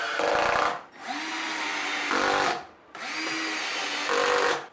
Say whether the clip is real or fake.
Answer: real